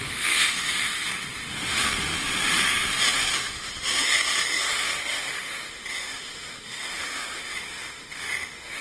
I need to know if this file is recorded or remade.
remade